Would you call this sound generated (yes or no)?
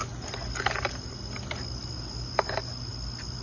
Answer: no